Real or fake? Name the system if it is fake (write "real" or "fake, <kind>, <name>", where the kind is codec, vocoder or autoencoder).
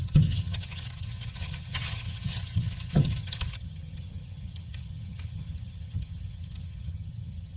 fake, vocoder, HiFi-GAN